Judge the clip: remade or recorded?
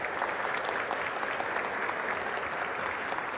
recorded